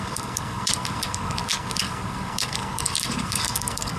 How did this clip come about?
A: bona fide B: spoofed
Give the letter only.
B